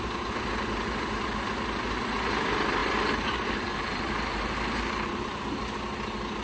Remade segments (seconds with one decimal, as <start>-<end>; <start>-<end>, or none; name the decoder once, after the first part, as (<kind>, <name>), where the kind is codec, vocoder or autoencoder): 2.8-5.4 (vocoder, BigVGAN v2)